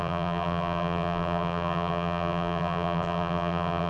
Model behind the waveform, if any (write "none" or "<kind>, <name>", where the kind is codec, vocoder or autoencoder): vocoder, BigVGAN v2